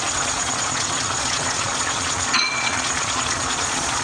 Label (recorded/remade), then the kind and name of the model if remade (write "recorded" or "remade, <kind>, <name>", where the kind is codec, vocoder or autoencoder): remade, vocoder, Vocos